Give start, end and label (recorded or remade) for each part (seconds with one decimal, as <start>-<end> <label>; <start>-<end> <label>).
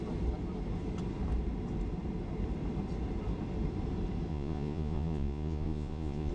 0.0-4.3 recorded; 4.3-6.3 remade